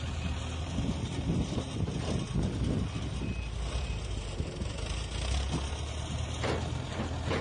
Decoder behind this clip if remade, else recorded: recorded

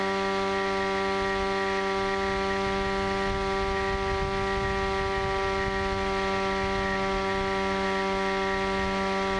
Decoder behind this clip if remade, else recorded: recorded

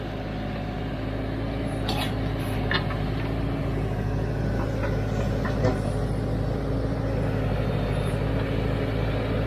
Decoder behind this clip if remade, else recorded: recorded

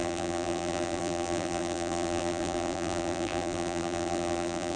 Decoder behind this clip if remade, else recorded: remade, vocoder, BigVGAN v2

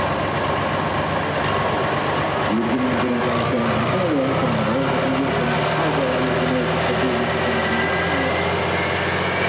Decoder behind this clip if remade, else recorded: recorded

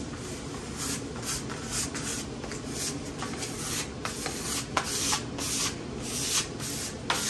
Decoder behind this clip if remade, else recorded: recorded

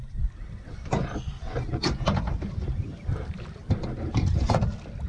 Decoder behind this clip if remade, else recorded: recorded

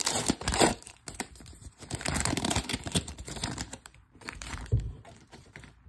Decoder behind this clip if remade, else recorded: remade, vocoder, BigVGAN v2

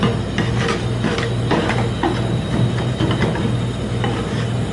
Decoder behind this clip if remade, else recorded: recorded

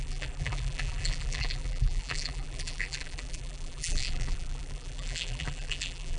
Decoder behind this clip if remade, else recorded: remade, vocoder, BigVGAN v2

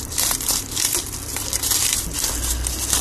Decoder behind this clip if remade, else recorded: remade, vocoder, BigVGAN v2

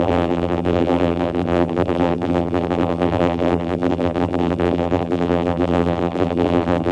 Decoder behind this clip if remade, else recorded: remade, vocoder, BigVGAN v2